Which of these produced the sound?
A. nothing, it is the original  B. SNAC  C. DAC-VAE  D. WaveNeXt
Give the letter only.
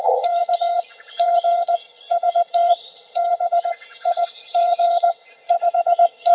D